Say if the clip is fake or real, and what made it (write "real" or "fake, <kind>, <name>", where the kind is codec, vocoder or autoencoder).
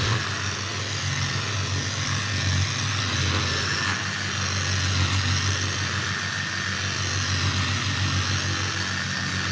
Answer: real